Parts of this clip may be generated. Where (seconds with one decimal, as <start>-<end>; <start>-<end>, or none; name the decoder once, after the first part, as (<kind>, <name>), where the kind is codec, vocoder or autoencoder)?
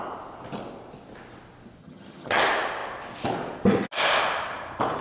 1.8-2.4 (vocoder, HiFi-GAN)